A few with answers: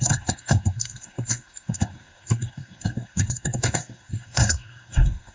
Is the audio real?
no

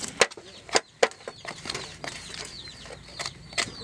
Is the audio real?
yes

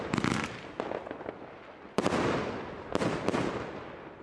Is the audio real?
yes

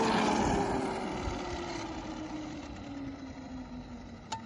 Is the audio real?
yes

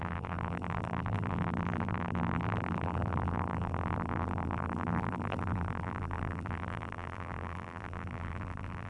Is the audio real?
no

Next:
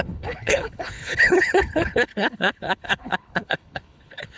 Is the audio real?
no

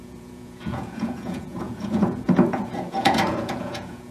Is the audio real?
no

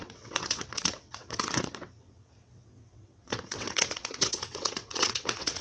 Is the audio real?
no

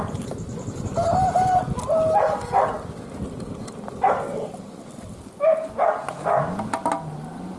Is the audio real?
yes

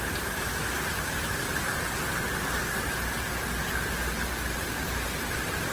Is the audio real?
yes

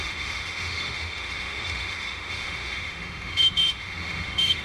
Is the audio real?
no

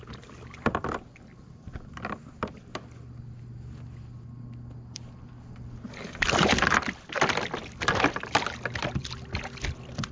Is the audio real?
yes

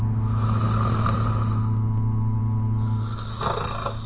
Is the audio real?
yes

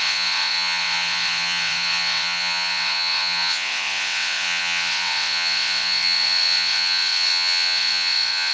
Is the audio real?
no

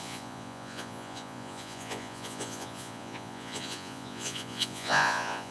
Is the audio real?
no